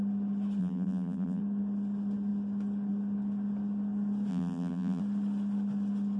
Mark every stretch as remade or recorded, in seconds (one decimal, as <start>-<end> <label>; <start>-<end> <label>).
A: 0.0-0.6 recorded; 0.6-1.4 remade; 1.4-4.3 recorded; 4.3-5.0 remade; 5.0-6.2 recorded